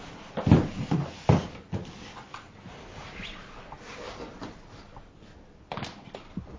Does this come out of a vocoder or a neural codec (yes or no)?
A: no